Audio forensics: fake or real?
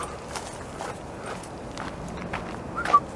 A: real